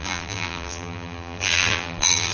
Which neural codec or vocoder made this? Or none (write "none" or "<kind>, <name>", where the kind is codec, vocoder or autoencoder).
vocoder, BigVGAN v2